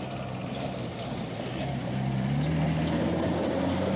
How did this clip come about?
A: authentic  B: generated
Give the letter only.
A